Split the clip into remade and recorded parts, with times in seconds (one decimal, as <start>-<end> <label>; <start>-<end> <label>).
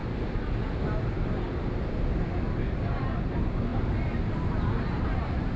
0.0-5.6 recorded